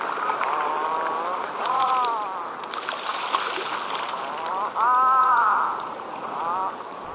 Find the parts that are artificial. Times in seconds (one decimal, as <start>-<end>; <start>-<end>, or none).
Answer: 1.4-1.9; 5.2-6.4